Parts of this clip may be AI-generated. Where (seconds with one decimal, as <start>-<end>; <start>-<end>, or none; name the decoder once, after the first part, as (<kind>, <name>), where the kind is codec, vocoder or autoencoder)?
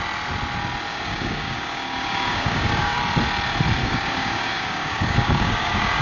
0.9-3.0 (codec, DAC); 3.8-6.0